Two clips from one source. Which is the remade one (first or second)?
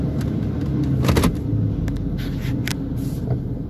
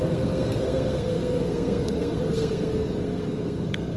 second